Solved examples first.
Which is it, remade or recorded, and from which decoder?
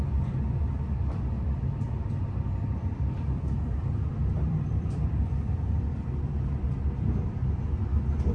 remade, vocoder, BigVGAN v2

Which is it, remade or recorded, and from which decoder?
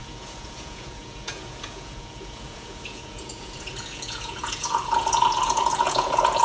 remade, vocoder, Vocos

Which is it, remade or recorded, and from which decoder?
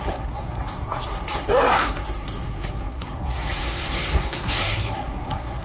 remade, codec, SNAC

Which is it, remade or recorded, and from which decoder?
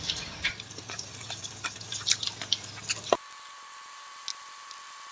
recorded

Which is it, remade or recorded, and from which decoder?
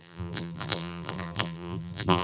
remade, vocoder, BigVGAN v2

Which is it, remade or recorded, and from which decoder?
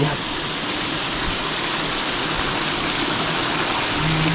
recorded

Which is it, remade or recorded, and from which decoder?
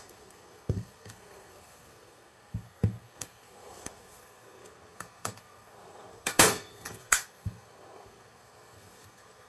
remade, codec, SNAC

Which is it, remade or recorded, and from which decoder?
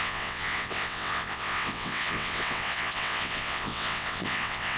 remade, vocoder, WaveNeXt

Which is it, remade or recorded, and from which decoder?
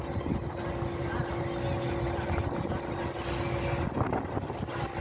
recorded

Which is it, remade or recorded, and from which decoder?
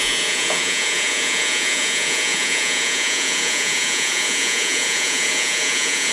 remade, vocoder, Vocos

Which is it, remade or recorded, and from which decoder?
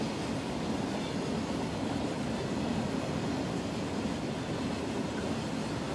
recorded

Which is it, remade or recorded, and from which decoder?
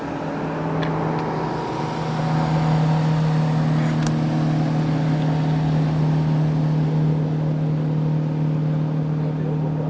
recorded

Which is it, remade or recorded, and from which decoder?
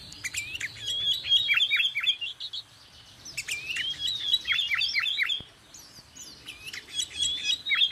recorded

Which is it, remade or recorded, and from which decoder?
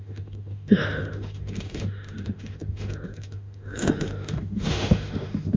remade, autoencoder, DAC-VAE